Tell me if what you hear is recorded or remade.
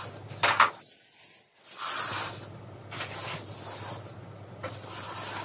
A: recorded